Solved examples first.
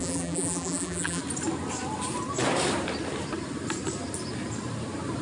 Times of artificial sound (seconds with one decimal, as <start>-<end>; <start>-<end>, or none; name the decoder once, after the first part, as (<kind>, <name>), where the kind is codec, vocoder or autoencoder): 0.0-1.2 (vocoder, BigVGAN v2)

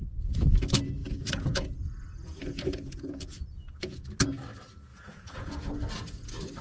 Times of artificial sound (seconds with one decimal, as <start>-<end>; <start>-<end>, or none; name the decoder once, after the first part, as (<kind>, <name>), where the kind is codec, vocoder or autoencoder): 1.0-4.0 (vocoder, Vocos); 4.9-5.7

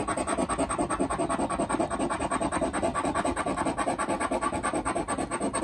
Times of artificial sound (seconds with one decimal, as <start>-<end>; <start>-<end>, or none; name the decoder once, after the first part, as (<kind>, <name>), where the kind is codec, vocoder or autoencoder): none

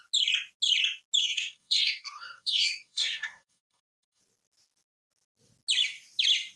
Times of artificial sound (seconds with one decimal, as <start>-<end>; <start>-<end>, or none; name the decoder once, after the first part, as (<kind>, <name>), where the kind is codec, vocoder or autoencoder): 1.2-4.2 (codec, SNAC)